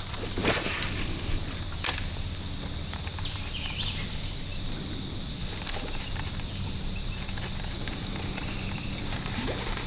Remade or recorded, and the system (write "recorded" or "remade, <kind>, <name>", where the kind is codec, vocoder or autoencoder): recorded